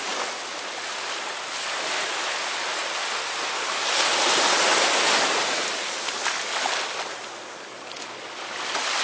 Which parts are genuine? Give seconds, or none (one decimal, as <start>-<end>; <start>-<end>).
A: 0.0-9.0